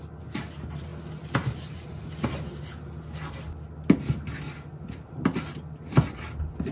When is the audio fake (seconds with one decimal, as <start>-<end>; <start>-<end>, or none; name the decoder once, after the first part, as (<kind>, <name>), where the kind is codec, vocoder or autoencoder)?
none